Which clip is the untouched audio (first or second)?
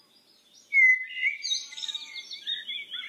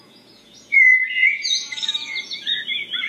first